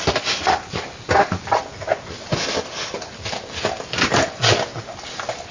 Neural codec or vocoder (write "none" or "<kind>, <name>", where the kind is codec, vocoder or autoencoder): none